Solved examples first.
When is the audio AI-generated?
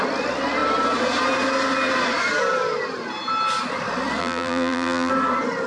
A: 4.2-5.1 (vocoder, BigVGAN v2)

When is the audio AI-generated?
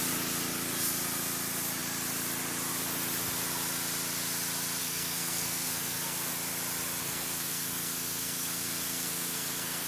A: 4.8-6.3 (codec, SNAC); 7.0-9.9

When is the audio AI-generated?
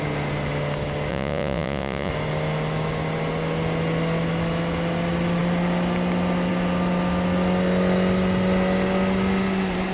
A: 1.1-2.1 (vocoder, Vocos)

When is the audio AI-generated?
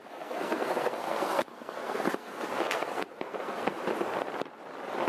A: 0.0-3.8 (codec, SNAC)